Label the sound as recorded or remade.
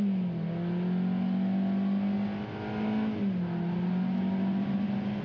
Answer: recorded